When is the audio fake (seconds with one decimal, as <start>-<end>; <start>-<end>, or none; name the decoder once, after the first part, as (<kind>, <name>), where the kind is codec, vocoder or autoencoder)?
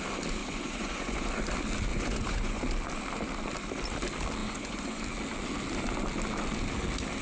0.4-1.3 (vocoder, Vocos); 1.9-2.6; 4.4-5.0